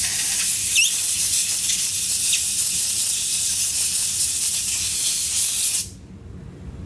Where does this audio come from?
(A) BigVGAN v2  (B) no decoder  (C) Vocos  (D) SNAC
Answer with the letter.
B